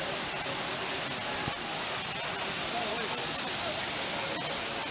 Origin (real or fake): real